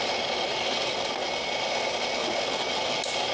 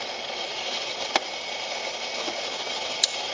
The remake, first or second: second